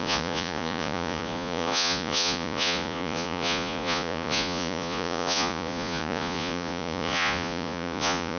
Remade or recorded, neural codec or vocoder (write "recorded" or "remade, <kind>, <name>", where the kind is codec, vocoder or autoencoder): remade, vocoder, Vocos